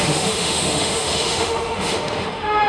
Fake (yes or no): yes